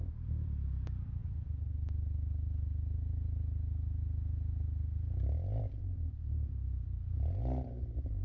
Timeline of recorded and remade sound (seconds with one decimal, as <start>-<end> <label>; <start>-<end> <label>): 0.0-1.2 remade; 1.2-5.6 recorded; 5.6-8.2 remade